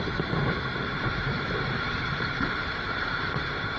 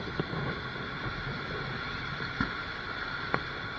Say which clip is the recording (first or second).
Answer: second